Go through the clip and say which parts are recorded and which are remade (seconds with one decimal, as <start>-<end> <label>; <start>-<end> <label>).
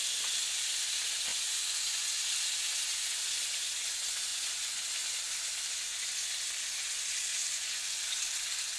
0.0-1.3 recorded; 1.3-2.2 remade; 2.2-4.3 recorded; 4.3-4.8 remade; 4.8-7.3 recorded; 7.3-8.0 remade; 8.0-8.8 recorded